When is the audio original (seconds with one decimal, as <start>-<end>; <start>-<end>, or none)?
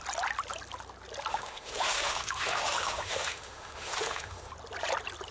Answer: 0.0-1.3; 4.5-5.3